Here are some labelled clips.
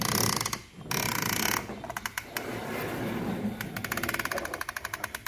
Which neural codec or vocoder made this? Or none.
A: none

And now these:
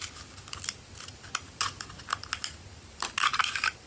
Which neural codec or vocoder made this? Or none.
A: none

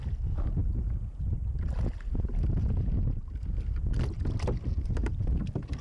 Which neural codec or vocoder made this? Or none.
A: none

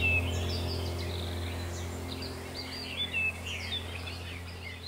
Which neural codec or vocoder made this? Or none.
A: none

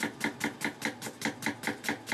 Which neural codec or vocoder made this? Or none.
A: none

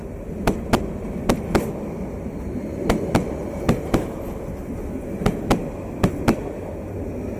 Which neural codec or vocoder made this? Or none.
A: none